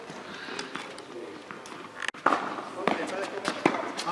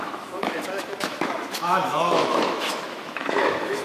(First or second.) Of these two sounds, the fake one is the second